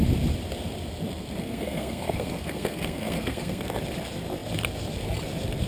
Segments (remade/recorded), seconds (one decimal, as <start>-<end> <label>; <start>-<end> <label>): 0.0-1.4 recorded; 1.4-3.8 remade; 3.8-5.7 recorded

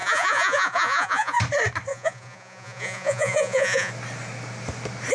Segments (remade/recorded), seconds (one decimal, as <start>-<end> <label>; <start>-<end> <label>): 0.0-1.4 remade; 1.4-1.9 recorded; 1.9-3.9 remade; 3.9-5.1 recorded